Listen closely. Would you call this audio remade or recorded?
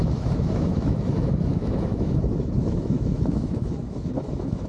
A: remade